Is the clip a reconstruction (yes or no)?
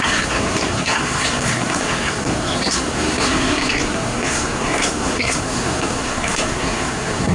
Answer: yes